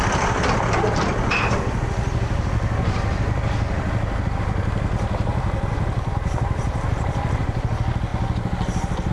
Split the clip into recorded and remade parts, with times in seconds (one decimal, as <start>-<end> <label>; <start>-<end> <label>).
0.0-9.1 recorded